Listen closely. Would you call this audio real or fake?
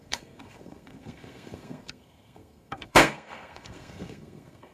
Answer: fake